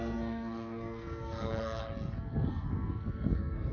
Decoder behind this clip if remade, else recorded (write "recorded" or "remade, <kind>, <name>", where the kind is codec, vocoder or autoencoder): remade, codec, SNAC